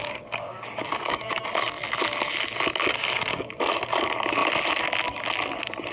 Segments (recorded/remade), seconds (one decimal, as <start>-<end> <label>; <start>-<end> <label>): 0.0-1.4 remade; 1.4-3.0 recorded; 3.0-3.5 remade; 3.5-5.9 recorded